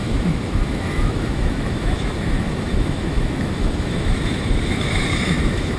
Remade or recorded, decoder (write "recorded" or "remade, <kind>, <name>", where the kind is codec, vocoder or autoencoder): remade, autoencoder, DAC-VAE